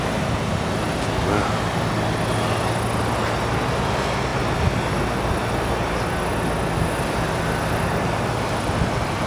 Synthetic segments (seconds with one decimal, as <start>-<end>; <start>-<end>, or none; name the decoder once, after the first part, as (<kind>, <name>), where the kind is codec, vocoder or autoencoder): none